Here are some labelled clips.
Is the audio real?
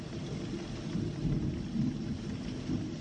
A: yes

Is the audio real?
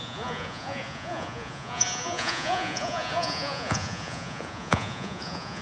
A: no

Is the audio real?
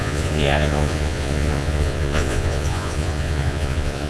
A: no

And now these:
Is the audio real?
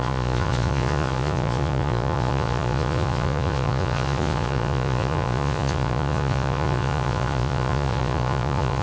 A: no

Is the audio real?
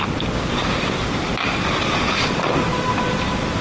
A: yes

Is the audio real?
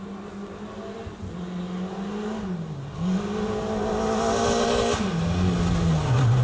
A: yes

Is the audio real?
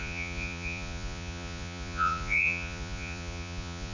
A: no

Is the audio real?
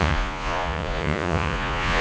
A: no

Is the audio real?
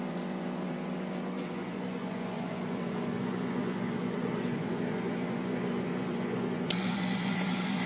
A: no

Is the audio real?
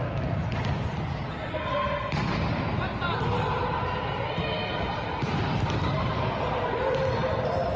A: yes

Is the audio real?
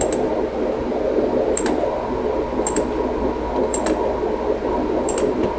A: yes